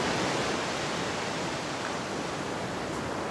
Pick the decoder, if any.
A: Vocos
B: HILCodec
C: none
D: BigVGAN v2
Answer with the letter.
C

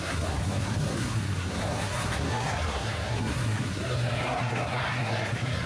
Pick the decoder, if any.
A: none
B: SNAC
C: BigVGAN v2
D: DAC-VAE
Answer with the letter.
B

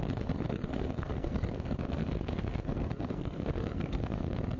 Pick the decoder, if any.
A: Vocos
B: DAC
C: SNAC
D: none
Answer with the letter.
C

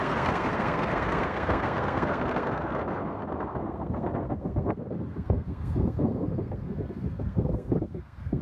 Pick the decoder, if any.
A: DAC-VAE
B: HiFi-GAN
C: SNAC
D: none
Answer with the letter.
C